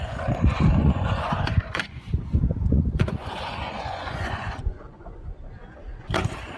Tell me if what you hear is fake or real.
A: fake